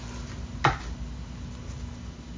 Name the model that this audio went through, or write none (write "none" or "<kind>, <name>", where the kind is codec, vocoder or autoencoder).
none